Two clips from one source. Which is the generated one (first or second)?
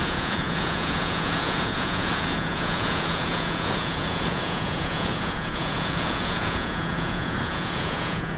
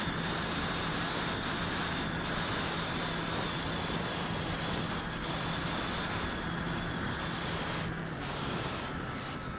first